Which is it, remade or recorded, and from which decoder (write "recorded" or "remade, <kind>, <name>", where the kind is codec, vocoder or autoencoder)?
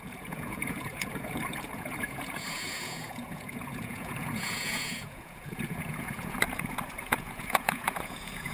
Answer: remade, vocoder, Vocos